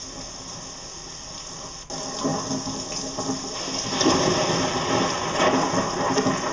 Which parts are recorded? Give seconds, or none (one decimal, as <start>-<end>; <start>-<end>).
0.0-6.5